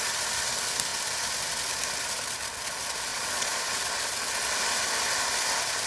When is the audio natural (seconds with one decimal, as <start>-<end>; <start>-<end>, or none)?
0.0-3.1; 3.7-5.9